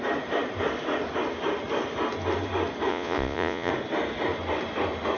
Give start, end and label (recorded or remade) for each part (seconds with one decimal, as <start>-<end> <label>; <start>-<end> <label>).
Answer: 0.0-2.9 recorded; 2.9-3.7 remade; 3.7-5.2 recorded